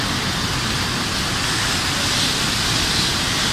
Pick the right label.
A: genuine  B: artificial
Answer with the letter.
A